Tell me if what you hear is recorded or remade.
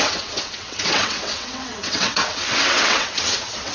remade